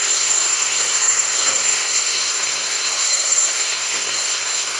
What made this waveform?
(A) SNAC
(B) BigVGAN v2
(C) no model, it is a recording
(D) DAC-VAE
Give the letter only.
A